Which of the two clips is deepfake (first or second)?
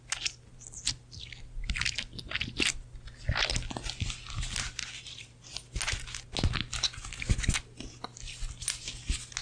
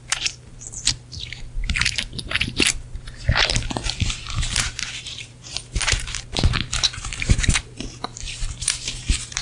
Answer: second